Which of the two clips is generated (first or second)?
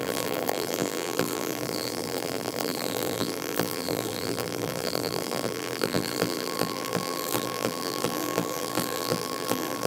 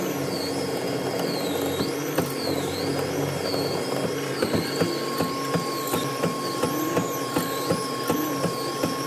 first